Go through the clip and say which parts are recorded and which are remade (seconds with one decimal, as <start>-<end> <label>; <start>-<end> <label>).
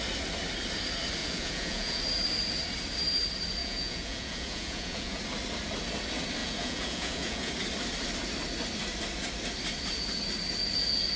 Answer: 0.0-1.2 recorded; 1.2-2.0 remade; 2.0-3.6 recorded; 3.6-5.2 remade; 5.2-6.4 recorded; 6.4-7.5 remade; 7.5-11.2 recorded